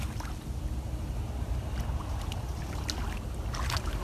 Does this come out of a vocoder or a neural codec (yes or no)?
no